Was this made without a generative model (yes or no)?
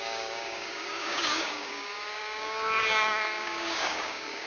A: no